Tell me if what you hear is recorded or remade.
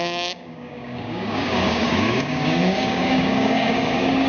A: remade